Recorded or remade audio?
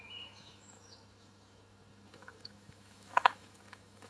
remade